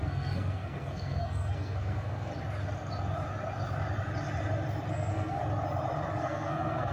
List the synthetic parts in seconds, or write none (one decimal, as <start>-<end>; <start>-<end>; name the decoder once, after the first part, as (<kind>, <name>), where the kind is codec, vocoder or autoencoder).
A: 0.0-2.3 (codec, SNAC); 4.9-5.4; 6.1-6.9